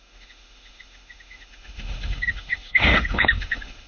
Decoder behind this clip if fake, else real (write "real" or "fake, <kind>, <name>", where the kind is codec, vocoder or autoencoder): fake, autoencoder, DAC-VAE